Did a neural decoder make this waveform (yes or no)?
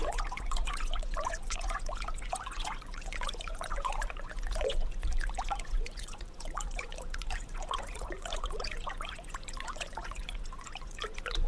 yes